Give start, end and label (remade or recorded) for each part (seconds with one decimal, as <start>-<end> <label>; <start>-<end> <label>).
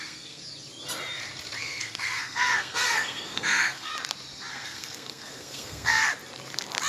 0.0-0.4 remade; 0.4-1.6 recorded; 1.6-3.9 remade; 3.9-4.5 recorded; 4.5-6.1 remade; 6.1-6.9 recorded